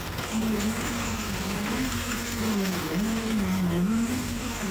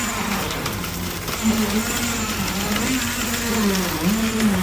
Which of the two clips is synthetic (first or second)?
first